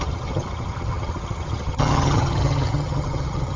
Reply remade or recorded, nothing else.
remade